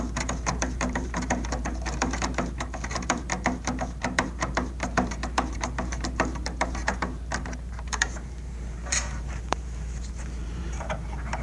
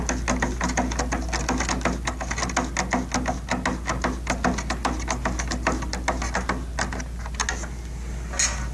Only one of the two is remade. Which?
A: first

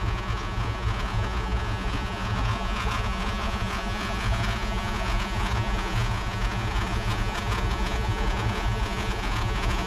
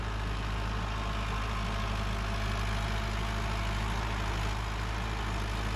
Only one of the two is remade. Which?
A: first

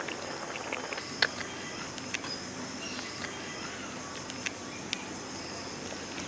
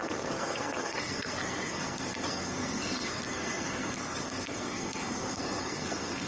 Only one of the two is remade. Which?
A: second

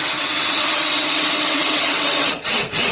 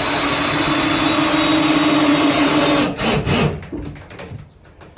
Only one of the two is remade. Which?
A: first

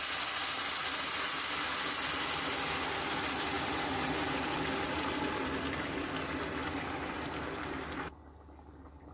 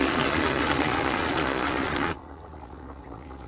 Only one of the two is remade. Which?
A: second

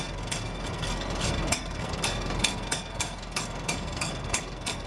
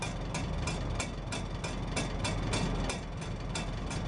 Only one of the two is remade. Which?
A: first